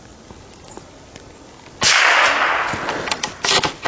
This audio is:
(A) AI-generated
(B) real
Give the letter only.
B